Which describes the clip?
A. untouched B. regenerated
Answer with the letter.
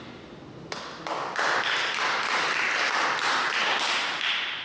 A